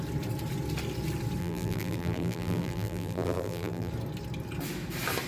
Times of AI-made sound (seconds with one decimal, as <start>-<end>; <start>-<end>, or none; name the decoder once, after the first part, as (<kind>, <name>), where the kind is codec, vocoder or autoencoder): 1.4-3.9 (vocoder, BigVGAN v2)